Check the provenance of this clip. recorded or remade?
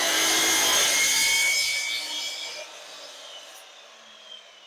recorded